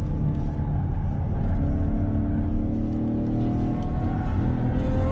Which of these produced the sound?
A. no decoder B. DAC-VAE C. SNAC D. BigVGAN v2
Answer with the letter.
A